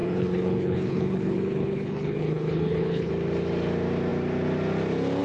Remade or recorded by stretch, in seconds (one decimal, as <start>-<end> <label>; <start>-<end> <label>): 0.0-3.1 remade; 3.1-5.2 recorded